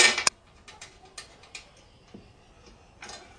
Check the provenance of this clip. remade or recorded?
recorded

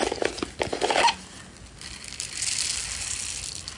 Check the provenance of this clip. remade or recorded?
recorded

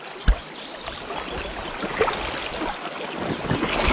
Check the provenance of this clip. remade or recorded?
recorded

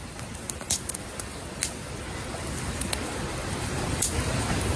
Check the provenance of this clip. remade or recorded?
recorded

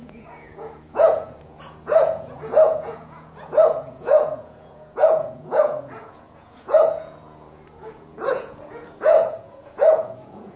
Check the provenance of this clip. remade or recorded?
remade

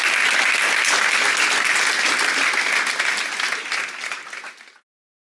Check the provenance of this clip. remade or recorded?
recorded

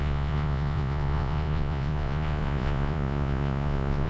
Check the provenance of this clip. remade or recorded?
remade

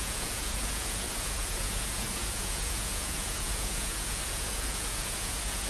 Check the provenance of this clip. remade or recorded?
remade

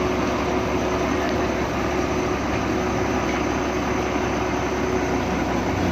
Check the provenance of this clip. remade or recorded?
recorded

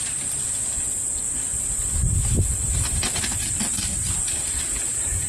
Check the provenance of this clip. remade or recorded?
recorded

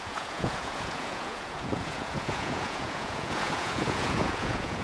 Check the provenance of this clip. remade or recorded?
remade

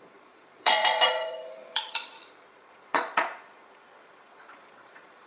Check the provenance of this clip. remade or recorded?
remade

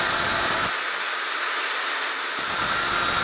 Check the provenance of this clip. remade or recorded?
recorded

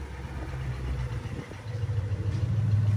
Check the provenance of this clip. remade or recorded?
recorded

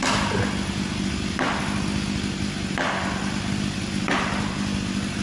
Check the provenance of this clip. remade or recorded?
recorded